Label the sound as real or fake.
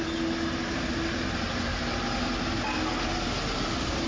real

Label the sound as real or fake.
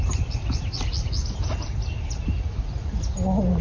real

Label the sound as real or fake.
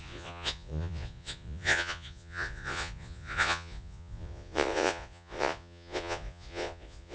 fake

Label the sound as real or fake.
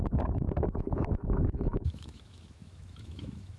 fake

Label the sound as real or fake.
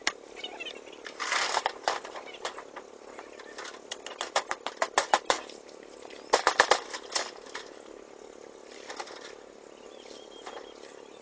real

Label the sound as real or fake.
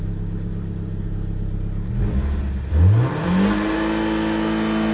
real